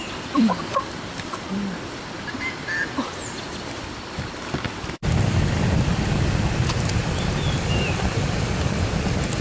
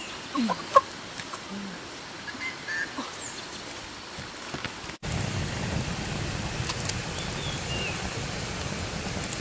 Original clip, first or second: second